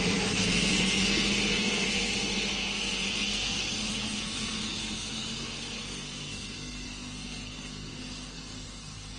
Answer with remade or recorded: remade